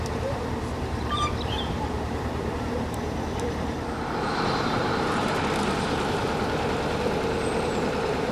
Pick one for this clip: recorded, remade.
remade